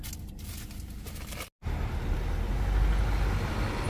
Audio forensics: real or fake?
real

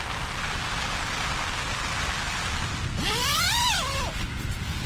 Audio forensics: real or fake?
real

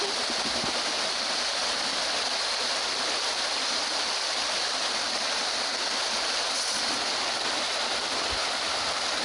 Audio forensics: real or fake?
real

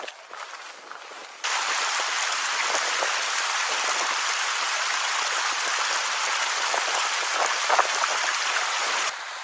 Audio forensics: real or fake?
real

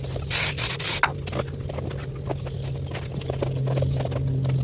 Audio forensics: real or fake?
real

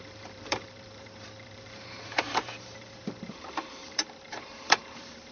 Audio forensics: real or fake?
fake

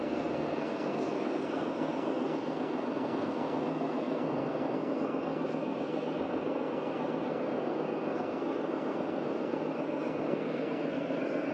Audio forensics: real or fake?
fake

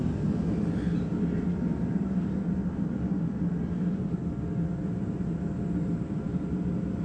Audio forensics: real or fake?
real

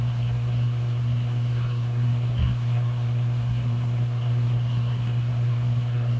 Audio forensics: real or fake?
fake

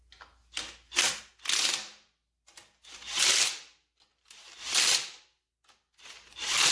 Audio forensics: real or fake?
real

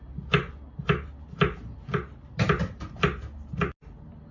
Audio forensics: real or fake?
real